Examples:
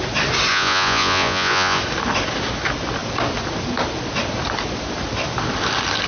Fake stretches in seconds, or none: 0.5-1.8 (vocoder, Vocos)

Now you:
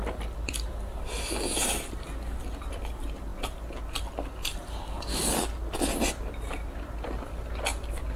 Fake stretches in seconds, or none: none